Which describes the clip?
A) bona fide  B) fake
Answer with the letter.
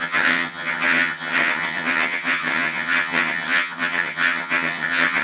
B